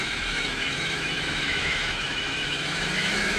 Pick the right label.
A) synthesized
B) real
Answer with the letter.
A